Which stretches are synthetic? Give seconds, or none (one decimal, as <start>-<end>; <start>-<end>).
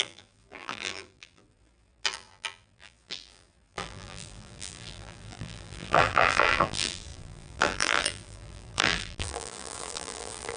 0.0-10.6